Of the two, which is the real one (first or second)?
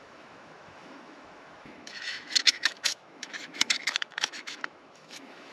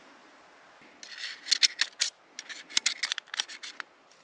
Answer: second